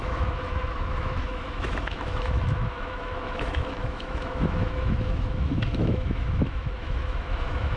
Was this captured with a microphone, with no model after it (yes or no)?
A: no